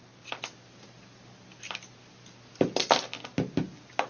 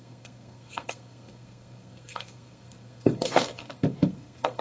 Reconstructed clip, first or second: second